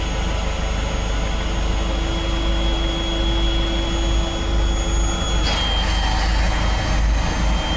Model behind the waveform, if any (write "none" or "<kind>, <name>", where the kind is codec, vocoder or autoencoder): none